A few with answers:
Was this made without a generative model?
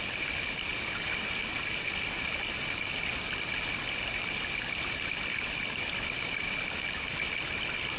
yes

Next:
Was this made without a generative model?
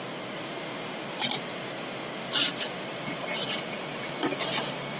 no